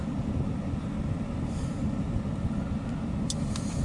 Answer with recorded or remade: recorded